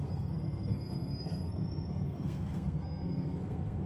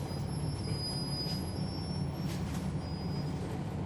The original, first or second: second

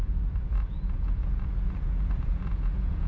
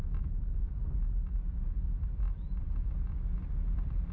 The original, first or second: second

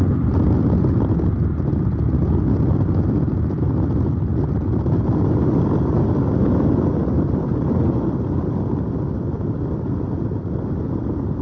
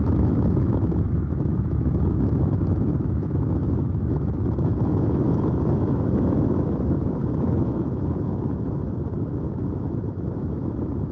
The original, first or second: first